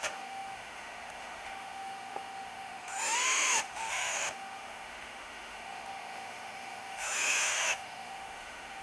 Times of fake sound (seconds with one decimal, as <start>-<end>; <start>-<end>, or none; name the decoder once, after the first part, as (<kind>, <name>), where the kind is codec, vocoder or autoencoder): 0.0-8.8 (autoencoder, DAC-VAE)